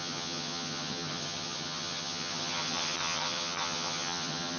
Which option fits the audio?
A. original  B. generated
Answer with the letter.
B